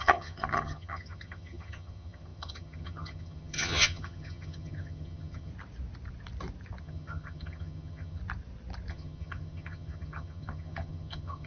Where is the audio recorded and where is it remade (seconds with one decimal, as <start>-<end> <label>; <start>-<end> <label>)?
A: 0.0-5.5 remade; 5.5-6.8 recorded; 6.8-8.2 remade; 8.2-8.9 recorded; 8.9-11.5 remade